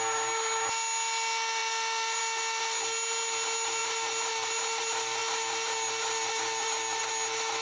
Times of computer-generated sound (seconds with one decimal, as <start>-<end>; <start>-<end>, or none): none